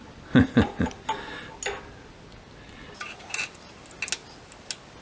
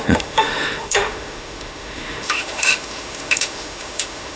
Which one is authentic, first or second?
first